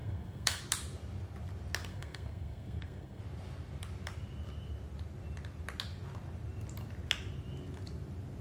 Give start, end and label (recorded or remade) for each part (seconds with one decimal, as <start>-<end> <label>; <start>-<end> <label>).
0.0-0.6 remade; 0.6-1.9 recorded; 1.9-3.2 remade; 3.2-8.4 recorded